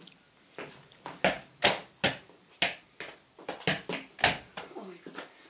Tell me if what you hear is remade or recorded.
recorded